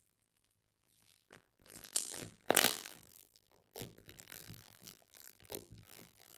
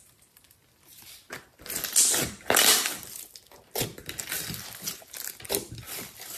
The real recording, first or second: second